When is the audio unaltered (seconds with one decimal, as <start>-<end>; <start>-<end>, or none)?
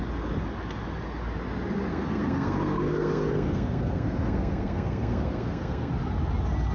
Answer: 0.0-1.9; 5.9-6.7